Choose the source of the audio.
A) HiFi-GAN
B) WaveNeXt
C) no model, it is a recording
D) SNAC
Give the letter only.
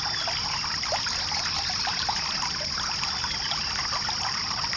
C